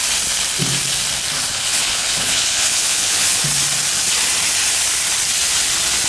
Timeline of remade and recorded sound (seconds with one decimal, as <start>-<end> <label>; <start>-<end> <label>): 0.0-1.5 recorded; 1.5-3.4 remade; 3.4-6.1 recorded